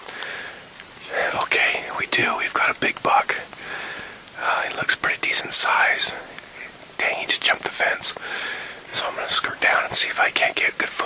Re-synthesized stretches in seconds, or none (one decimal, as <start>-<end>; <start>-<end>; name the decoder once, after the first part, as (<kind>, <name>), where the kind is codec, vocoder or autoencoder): 0.0-2.2 (vocoder, BigVGAN v2); 5.4-8.9; 9.5-11.1